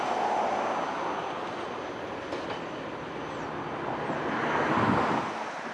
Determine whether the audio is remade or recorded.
recorded